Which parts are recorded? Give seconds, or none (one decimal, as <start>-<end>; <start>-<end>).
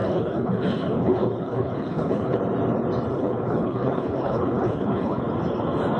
2.4-3.1; 5.2-6.0